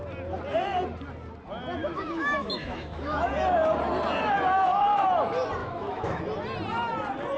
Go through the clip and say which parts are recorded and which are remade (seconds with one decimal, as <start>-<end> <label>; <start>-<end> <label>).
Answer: 0.0-1.8 recorded; 1.8-3.3 remade; 3.3-5.6 recorded; 5.6-6.2 remade; 6.2-7.4 recorded